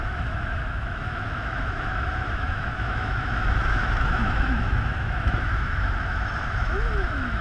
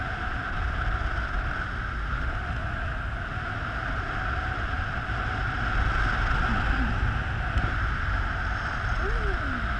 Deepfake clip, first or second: first